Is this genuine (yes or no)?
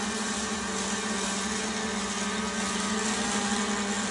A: yes